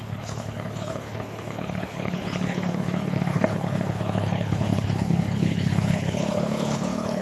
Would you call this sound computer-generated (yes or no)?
yes